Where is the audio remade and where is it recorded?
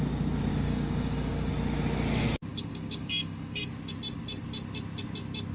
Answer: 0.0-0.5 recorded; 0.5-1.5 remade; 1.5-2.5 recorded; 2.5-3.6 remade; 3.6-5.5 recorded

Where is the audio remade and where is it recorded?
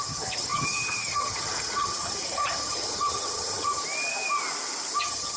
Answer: 0.0-3.8 remade; 3.8-5.0 recorded; 5.0-5.4 remade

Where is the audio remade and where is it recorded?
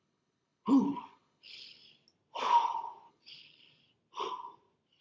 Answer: 0.0-1.8 remade; 1.8-3.1 recorded; 3.1-3.8 remade; 3.8-5.0 recorded